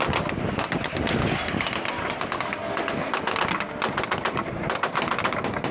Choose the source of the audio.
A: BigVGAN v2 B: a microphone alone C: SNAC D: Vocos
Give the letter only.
B